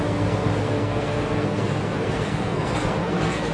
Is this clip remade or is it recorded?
remade